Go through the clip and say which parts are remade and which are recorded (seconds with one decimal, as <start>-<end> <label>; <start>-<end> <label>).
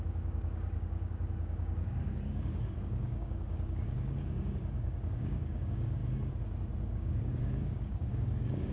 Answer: 0.0-6.0 remade; 6.0-6.9 recorded; 6.9-8.7 remade